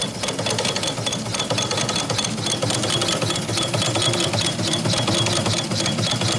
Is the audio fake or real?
real